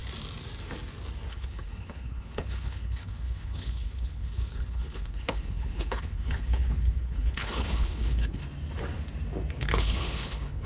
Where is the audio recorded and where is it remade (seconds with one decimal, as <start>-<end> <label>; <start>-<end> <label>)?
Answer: 0.0-1.3 recorded; 1.3-8.4 remade; 8.4-9.6 recorded; 9.6-10.7 remade